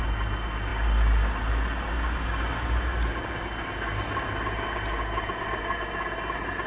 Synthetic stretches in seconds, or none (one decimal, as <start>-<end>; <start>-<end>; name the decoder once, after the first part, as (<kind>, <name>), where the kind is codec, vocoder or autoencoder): none